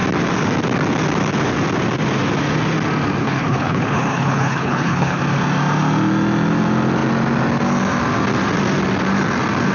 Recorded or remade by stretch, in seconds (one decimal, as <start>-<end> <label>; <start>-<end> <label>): 0.0-3.2 recorded; 3.2-5.2 remade; 5.2-9.7 recorded